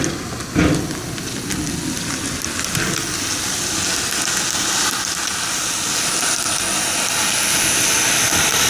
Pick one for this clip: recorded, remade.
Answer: recorded